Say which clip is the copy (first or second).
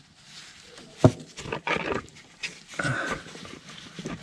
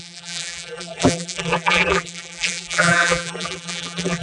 second